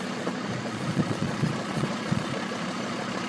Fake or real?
fake